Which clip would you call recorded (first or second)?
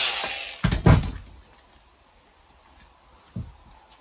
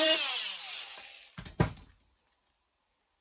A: first